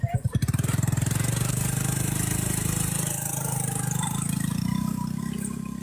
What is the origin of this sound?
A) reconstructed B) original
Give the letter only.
B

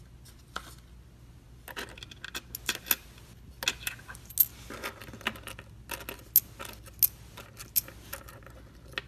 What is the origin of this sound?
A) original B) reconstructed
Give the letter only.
A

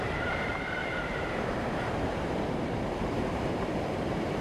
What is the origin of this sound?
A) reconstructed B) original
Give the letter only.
A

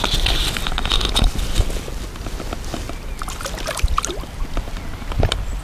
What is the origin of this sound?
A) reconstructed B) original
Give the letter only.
B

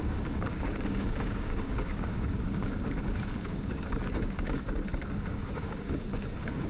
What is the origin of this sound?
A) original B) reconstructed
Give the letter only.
B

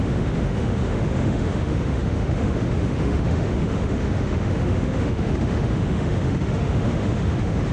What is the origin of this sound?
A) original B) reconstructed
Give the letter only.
B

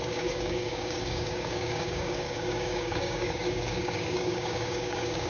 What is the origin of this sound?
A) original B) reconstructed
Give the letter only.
B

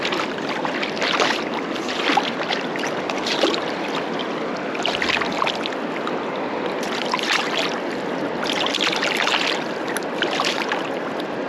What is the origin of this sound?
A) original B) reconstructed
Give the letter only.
A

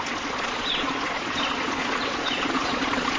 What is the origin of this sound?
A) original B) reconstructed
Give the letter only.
B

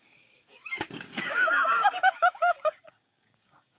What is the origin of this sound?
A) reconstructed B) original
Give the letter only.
A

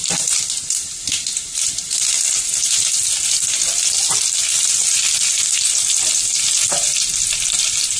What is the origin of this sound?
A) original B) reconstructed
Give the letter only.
A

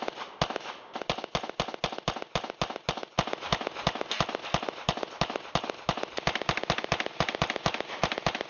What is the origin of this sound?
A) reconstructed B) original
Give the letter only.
B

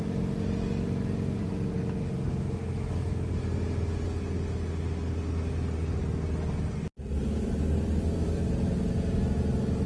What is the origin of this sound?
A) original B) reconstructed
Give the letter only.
A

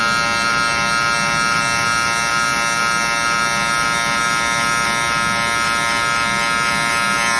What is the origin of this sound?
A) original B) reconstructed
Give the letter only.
A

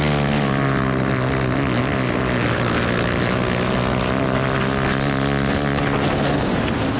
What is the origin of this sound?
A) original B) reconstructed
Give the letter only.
A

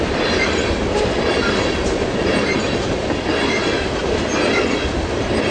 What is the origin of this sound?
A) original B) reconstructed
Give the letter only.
A